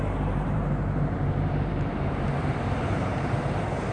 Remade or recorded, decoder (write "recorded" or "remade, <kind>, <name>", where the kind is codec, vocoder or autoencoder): remade, vocoder, BigVGAN v2